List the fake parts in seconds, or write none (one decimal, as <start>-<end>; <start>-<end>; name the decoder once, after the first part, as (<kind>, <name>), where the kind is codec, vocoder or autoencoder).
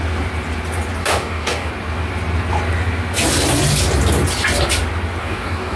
1.0-1.7 (codec, DAC); 5.2-5.8